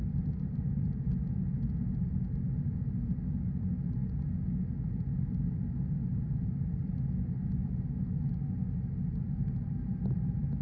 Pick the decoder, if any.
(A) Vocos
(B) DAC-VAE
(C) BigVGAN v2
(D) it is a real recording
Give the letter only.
D